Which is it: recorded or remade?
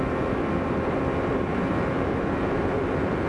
recorded